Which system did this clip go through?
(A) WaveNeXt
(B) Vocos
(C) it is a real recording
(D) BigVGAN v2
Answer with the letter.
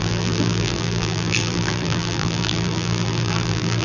D